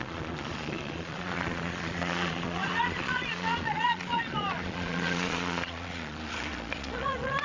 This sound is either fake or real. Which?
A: fake